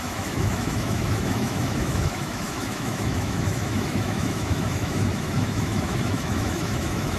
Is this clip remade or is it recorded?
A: remade